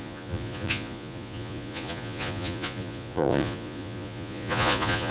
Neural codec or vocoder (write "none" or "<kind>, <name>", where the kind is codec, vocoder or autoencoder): vocoder, Vocos